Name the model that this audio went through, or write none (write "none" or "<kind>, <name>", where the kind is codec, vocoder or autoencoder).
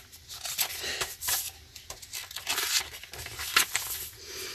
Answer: none